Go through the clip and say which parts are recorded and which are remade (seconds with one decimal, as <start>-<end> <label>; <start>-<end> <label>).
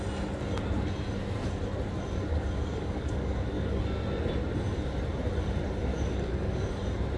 0.0-2.3 recorded; 2.3-3.8 remade; 3.8-5.9 recorded; 5.9-6.7 remade; 6.7-7.2 recorded